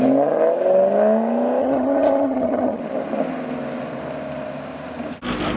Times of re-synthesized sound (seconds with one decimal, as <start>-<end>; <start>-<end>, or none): 1.6-2.8